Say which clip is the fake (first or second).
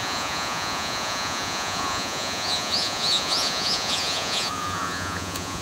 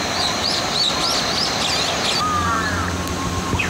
first